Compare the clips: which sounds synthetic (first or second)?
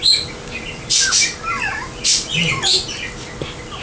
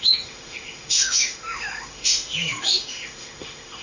second